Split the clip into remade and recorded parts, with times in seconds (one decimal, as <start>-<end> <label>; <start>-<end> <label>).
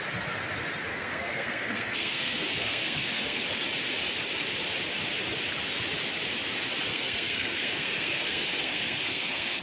0.0-0.9 recorded; 0.9-3.4 remade; 3.4-6.9 recorded; 6.9-9.6 remade